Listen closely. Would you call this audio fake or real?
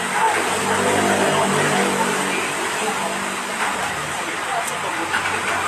real